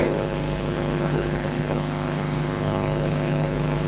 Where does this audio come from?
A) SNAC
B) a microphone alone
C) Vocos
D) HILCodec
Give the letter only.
D